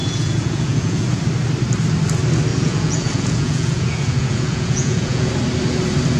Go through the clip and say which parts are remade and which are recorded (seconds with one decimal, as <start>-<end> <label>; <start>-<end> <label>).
0.0-1.2 remade; 1.2-2.5 recorded; 2.5-5.3 remade; 5.3-6.2 recorded